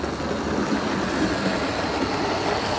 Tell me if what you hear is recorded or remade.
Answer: recorded